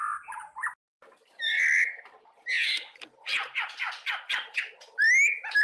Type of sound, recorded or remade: recorded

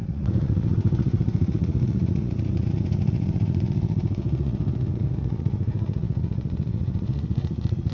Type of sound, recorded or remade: remade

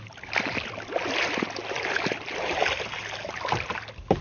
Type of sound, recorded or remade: recorded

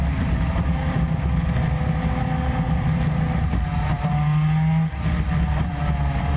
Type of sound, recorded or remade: recorded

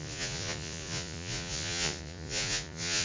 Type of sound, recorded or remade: remade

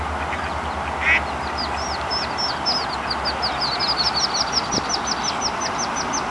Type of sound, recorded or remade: recorded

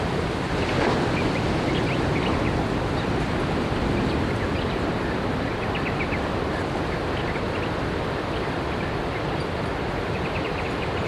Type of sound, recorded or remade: recorded